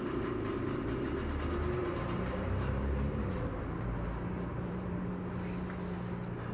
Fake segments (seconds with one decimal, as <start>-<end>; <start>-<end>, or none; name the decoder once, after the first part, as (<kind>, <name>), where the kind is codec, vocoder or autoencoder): 1.8-3.2 (vocoder, BigVGAN v2); 4.5-5.1